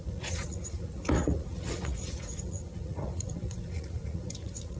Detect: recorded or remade remade